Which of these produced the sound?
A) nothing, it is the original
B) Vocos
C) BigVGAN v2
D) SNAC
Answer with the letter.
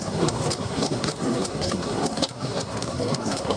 D